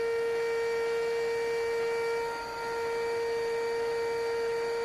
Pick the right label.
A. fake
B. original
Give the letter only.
B